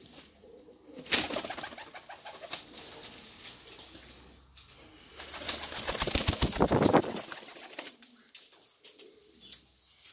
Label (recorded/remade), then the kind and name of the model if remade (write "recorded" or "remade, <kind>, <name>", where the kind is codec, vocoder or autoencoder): recorded